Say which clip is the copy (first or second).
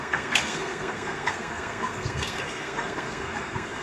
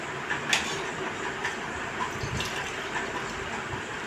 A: first